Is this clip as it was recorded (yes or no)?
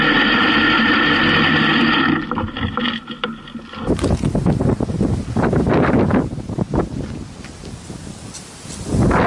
yes